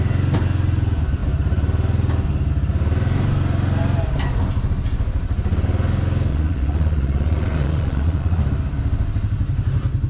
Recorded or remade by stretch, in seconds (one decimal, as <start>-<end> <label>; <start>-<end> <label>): 0.0-6.3 recorded; 6.3-8.4 remade; 8.4-10.1 recorded